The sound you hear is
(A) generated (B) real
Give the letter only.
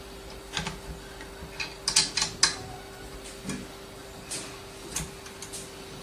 B